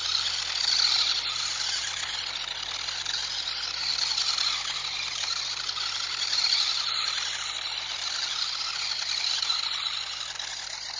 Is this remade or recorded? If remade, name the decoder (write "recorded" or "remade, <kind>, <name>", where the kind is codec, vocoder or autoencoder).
recorded